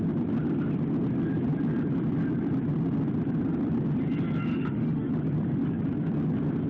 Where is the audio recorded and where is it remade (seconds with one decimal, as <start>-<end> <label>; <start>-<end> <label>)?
0.0-4.5 recorded; 4.5-5.1 remade; 5.1-6.7 recorded